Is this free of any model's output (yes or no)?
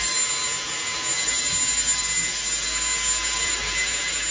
yes